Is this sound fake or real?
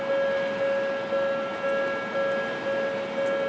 real